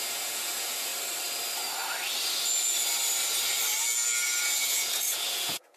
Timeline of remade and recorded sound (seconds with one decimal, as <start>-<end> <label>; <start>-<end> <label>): 0.0-0.9 remade; 0.9-4.4 recorded; 4.4-5.8 remade